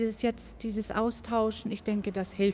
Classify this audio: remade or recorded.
remade